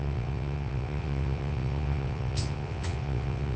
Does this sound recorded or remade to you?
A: remade